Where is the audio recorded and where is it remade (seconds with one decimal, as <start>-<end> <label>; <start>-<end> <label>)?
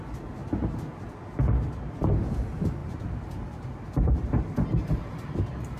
0.0-2.8 recorded; 2.8-5.3 remade; 5.3-5.8 recorded